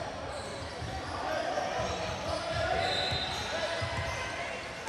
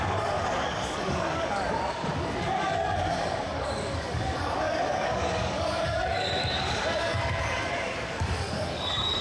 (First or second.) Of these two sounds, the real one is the first